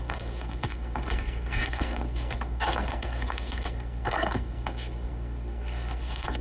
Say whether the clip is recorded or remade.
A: remade